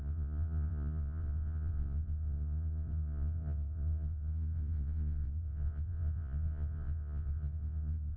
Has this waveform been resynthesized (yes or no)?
yes